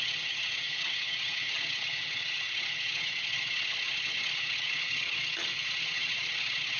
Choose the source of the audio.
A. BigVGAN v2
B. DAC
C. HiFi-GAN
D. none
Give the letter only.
C